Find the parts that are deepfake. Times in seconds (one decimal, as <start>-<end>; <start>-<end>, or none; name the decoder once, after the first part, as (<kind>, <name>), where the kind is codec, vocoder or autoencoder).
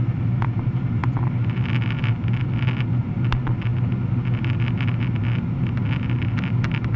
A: none